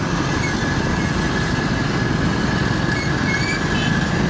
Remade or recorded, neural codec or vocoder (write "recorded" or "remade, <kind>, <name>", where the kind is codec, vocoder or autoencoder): recorded